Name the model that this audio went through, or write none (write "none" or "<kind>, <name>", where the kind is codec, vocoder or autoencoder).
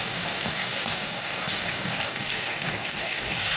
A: codec, DAC